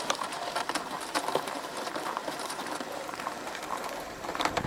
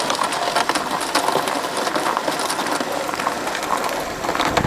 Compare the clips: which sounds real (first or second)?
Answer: second